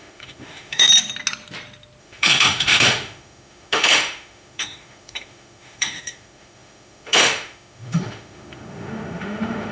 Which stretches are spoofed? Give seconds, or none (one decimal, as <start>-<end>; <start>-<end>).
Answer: 0.0-0.9; 2.0-9.7

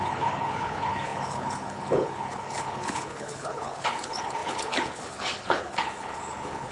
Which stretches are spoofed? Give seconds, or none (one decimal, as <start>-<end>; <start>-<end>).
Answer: 0.0-6.7

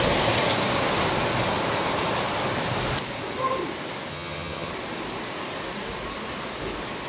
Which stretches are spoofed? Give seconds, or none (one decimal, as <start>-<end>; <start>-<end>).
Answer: 4.1-4.7

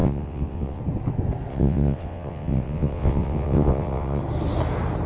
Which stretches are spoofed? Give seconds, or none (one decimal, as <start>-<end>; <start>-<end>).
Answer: 0.0-0.8; 1.5-4.2

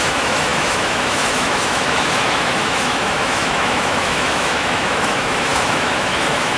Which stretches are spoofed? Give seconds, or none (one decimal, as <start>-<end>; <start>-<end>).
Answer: 0.0-6.6

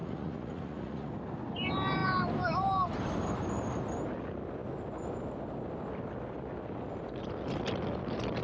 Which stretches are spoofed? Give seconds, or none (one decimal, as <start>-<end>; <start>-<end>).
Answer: 0.0-1.1